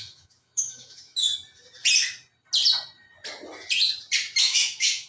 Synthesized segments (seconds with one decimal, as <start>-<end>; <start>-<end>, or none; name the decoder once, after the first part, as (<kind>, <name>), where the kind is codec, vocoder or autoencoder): 0.0-1.3 (autoencoder, DAC-VAE); 4.4-5.1